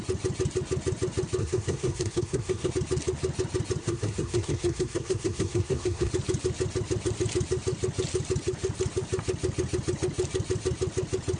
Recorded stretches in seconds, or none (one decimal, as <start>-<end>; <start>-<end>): 0.0-1.4; 2.7-3.8; 6.1-11.4